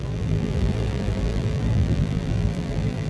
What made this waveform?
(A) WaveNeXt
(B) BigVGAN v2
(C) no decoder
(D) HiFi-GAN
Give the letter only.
B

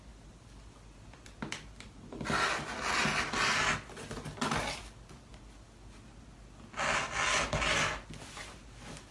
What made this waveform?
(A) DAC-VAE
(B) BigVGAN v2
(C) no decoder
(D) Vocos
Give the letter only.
C